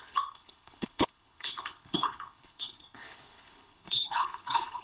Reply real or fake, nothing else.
fake